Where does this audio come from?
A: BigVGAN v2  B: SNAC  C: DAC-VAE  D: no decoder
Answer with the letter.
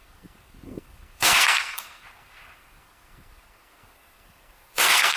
B